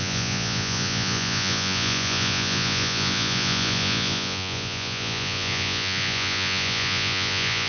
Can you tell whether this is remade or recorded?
remade